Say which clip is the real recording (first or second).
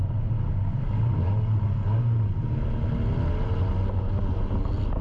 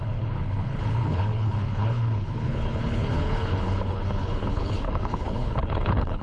first